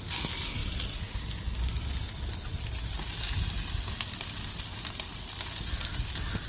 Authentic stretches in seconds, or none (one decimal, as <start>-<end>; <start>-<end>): 0.0-6.5